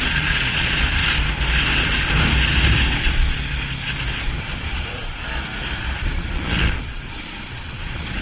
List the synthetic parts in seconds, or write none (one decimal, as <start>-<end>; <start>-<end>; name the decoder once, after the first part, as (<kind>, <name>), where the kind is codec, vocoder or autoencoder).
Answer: 0.0-1.0 (vocoder, Vocos); 4.4-5.1; 5.8-8.2